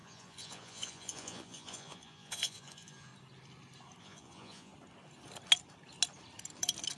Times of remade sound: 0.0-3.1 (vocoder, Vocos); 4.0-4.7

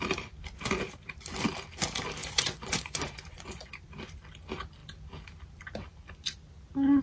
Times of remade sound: 2.2-3.7 (vocoder, Vocos)

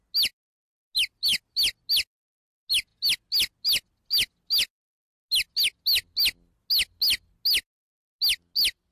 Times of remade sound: none

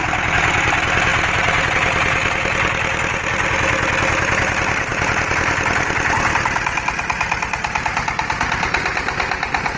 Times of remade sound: none

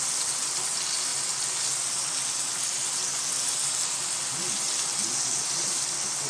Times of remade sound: none

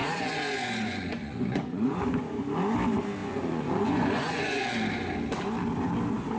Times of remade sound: 0.0-2.0 (vocoder, Vocos); 3.2-4.6

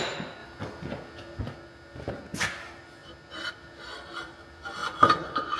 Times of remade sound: 4.8-5.6 (vocoder, Vocos)

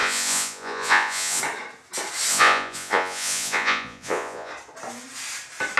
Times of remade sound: 0.0-1.4 (vocoder, Vocos); 2.3-4.5